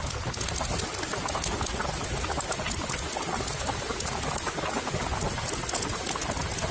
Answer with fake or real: real